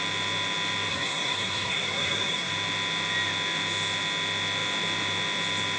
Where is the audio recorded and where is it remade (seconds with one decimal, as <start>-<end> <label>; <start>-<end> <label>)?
0.0-0.9 recorded; 0.9-2.5 remade; 2.5-5.8 recorded

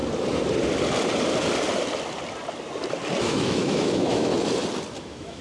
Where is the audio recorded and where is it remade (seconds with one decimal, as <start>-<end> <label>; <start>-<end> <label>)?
0.0-3.2 recorded; 3.2-4.3 remade; 4.3-5.0 recorded; 5.0-5.4 remade